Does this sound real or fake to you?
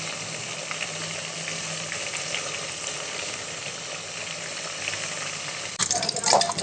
real